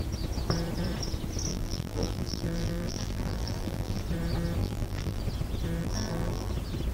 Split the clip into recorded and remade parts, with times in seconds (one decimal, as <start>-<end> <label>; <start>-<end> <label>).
0.0-1.5 recorded; 1.5-4.0 remade; 4.0-4.6 recorded; 4.6-5.2 remade; 5.2-5.8 recorded; 5.8-6.5 remade; 6.5-6.9 recorded